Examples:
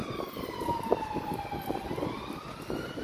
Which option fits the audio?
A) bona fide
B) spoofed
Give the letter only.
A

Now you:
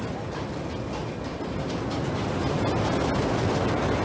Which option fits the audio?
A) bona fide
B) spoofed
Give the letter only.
A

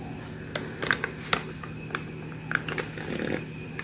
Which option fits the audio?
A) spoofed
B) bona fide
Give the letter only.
B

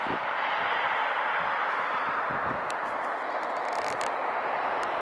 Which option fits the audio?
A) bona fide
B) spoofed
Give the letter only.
A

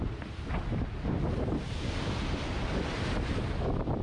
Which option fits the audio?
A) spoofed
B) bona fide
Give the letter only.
B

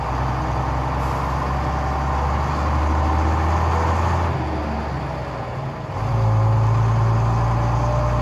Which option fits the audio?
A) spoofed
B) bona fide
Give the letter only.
B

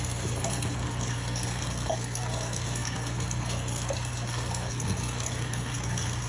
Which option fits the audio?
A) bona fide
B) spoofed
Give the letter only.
B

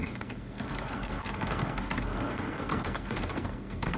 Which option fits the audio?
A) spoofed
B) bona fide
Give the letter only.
A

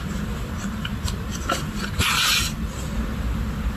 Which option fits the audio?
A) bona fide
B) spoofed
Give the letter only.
A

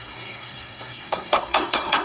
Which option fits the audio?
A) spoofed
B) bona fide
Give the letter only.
A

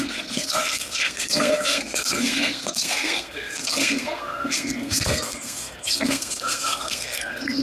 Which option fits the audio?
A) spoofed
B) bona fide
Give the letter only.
A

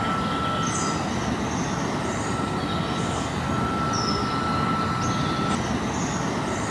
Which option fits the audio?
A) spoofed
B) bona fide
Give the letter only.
B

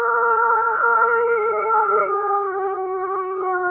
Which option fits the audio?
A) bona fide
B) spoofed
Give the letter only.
B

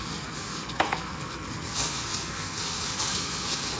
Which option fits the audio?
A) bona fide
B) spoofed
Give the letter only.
B